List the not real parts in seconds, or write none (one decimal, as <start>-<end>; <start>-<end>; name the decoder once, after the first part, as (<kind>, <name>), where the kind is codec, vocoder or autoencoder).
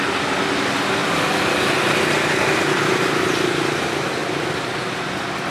1.0-1.6 (vocoder, BigVGAN v2); 4.2-5.5